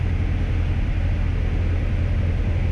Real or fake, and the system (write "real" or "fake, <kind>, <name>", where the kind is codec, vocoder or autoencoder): real